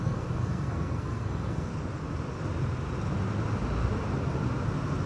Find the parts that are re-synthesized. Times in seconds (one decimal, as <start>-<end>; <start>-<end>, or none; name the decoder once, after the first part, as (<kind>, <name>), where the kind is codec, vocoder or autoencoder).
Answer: 0.0-1.7 (codec, SNAC)